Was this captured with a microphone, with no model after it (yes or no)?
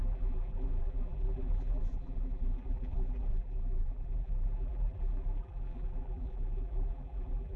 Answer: no